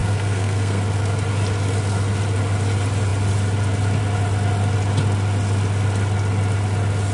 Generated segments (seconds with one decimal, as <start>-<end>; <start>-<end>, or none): 0.0-0.8